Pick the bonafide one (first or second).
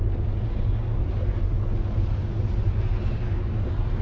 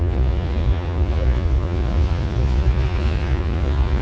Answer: first